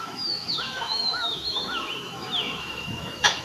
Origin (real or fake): fake